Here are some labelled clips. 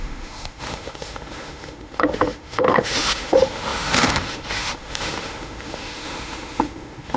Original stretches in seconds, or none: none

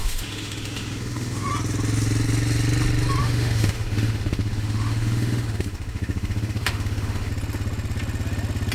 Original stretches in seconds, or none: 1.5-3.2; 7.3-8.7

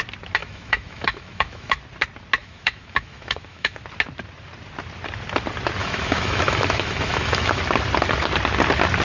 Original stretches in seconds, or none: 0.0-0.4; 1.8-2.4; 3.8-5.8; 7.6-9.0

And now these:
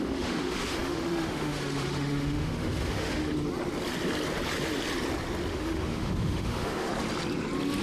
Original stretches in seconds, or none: 3.3-5.5; 6.9-7.8

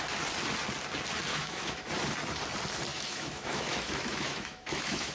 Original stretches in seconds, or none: 0.0-1.3; 1.9-2.9

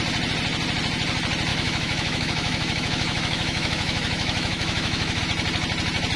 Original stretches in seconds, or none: 0.0-1.5; 5.2-6.2